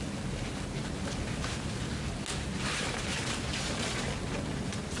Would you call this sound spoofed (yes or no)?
no